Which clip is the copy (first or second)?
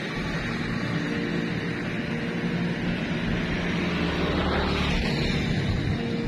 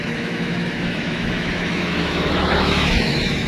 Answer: second